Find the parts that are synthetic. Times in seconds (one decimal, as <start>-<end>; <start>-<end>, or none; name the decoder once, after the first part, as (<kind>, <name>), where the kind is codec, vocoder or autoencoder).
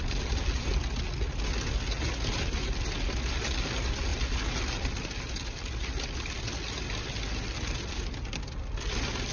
none